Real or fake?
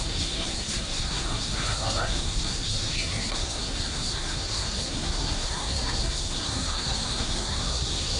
fake